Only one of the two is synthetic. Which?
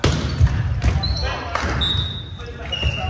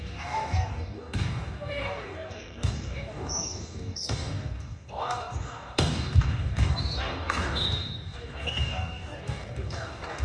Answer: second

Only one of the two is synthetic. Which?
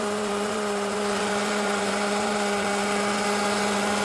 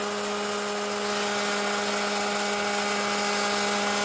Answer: first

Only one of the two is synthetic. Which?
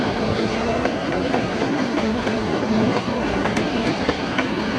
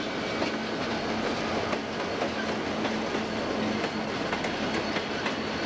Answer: first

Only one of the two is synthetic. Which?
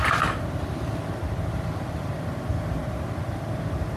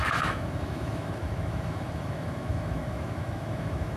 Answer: second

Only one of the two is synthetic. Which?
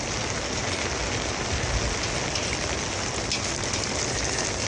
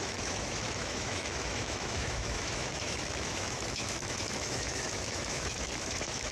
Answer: second